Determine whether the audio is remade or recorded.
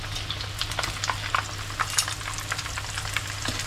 recorded